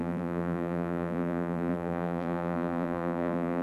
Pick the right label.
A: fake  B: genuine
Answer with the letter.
A